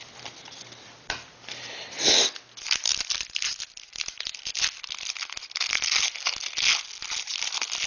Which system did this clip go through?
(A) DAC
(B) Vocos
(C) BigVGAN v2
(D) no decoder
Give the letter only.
D